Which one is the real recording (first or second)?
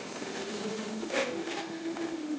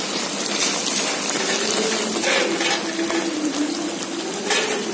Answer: second